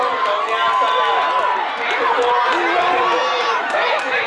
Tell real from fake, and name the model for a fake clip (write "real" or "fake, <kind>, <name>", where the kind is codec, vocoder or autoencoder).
real